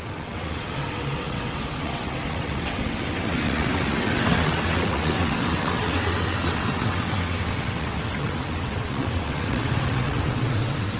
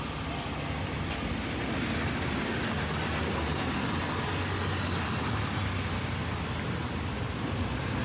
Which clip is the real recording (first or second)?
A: second